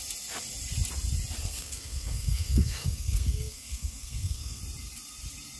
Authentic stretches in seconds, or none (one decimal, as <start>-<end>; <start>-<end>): 0.0-1.4; 4.6-5.6